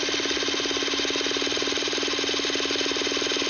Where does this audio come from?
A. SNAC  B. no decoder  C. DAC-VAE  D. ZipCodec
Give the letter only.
B